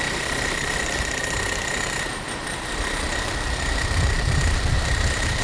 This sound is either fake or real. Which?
fake